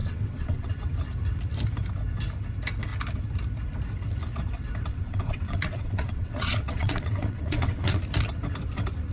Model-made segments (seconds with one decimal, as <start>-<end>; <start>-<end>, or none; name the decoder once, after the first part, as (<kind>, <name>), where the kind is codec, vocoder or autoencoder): 0.0-0.7 (vocoder, WaveNeXt); 4.9-8.0